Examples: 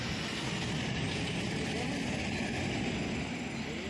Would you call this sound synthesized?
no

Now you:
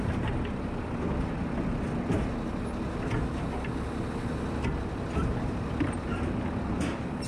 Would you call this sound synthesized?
no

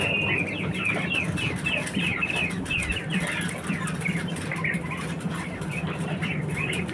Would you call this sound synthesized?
yes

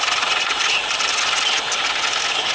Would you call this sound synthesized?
no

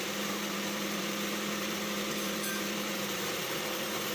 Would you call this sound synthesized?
yes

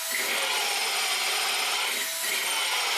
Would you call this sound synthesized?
no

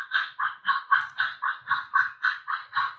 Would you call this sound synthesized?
no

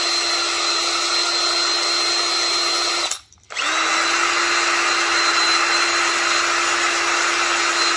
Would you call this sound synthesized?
no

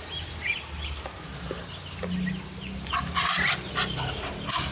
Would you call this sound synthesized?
yes